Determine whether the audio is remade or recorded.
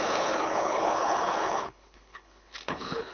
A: remade